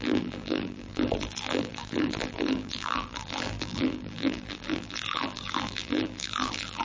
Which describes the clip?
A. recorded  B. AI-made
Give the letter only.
B